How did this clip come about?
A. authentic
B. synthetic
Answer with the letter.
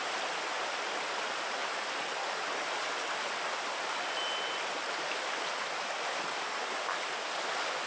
A